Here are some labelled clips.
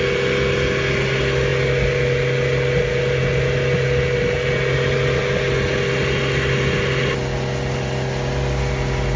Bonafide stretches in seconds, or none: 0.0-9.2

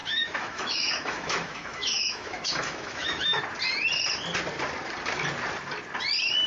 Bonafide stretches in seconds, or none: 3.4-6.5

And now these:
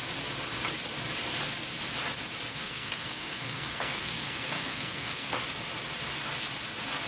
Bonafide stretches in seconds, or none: 0.0-2.5; 5.3-7.1

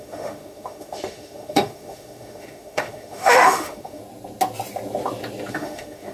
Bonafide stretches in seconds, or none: 4.0-5.5

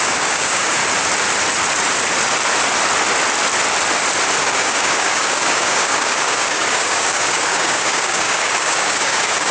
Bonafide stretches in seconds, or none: 0.8-4.4